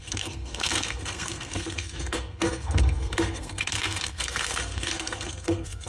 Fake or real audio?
fake